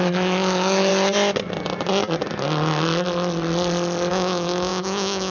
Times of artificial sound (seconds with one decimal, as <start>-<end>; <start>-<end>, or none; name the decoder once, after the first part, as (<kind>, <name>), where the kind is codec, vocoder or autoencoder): 0.0-0.9 (autoencoder, DAC-VAE); 4.1-5.3